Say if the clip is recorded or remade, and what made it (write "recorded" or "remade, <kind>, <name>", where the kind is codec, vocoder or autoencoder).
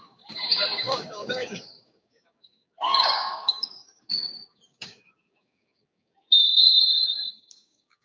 remade, codec, DAC